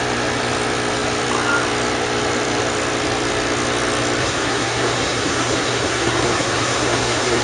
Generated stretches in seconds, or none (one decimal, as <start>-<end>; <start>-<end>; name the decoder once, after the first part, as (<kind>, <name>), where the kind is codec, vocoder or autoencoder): 4.2-7.4 (codec, SNAC)